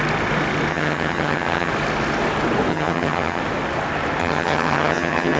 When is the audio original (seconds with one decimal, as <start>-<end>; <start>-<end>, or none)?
0.0-0.7; 1.7-2.7; 3.4-4.2